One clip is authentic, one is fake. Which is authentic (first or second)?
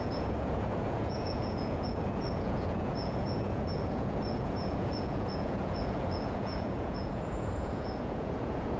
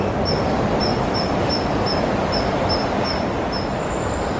second